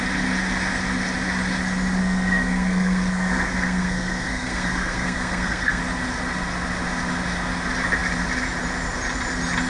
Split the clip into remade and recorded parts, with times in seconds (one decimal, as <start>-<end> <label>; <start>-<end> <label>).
0.0-2.0 recorded; 2.0-5.8 remade; 5.8-9.7 recorded